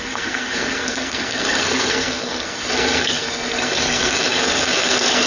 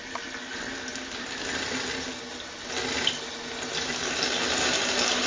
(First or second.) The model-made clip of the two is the first